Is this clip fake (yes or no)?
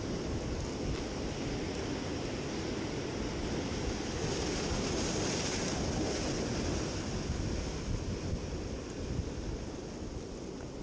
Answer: no